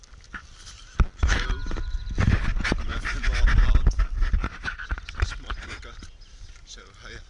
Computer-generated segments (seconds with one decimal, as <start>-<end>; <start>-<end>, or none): none